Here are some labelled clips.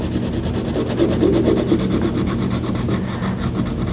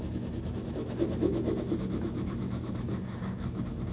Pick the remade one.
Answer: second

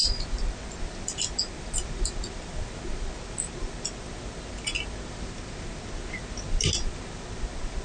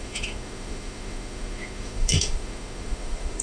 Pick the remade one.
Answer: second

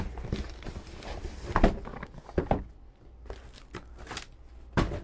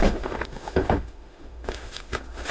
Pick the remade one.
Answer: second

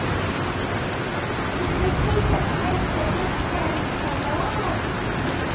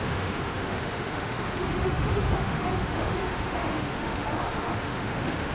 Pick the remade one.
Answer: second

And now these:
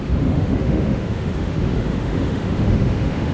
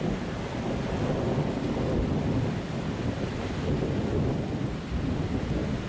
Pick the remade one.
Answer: first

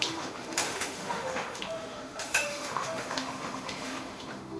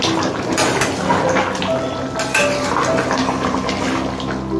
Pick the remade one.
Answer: first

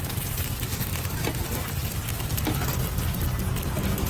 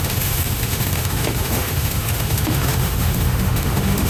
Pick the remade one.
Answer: second